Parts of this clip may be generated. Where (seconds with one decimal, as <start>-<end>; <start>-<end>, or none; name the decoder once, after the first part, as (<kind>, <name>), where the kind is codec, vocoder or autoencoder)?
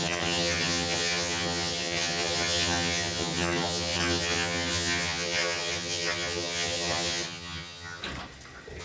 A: 0.0-8.0 (vocoder, HiFi-GAN)